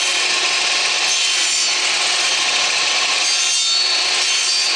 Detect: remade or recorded recorded